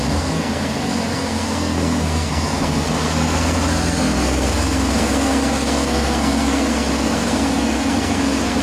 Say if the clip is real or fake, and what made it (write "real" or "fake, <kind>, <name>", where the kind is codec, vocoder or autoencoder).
fake, codec, SNAC